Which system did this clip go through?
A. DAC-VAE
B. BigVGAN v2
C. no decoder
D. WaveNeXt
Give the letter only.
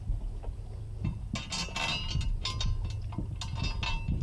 C